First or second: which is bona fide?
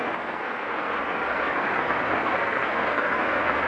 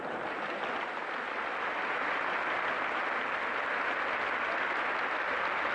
second